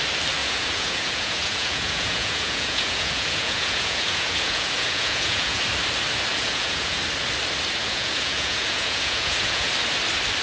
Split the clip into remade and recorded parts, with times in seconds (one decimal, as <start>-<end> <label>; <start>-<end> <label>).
0.0-0.4 recorded; 0.4-5.6 remade; 5.6-6.3 recorded; 6.3-7.0 remade; 7.0-7.8 recorded; 7.8-9.7 remade; 9.7-10.4 recorded